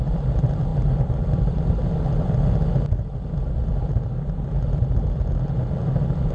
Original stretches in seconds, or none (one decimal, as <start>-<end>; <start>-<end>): 0.0-6.3